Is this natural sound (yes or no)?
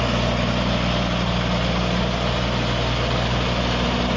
yes